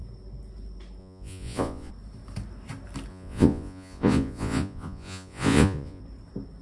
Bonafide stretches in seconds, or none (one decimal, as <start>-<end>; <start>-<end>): 0.0-1.0; 1.9-3.1; 6.0-6.6